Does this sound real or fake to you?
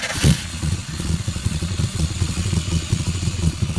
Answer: fake